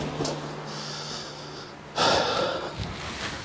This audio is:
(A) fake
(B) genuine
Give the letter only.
B